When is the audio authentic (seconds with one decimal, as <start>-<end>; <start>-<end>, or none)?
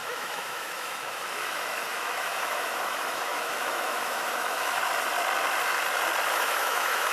4.8-6.3